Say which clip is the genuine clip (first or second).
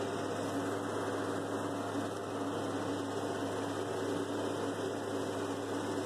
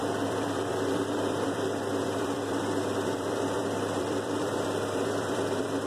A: first